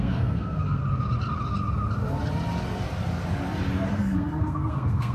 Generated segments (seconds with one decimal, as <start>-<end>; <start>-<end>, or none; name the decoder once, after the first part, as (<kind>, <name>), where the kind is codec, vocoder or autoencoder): 0.0-0.8 (codec, SNAC); 3.9-5.1